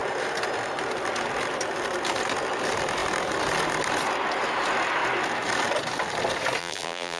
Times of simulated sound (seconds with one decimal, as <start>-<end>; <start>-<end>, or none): 6.6-7.2